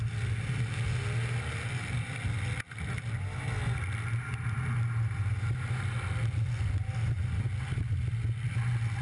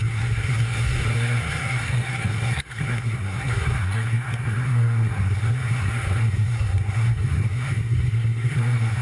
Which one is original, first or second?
first